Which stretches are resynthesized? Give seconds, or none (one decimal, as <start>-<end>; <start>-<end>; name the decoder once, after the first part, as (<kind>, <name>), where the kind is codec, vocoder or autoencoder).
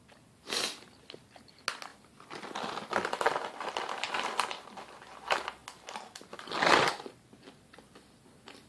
none